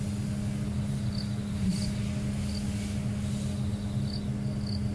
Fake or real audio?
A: real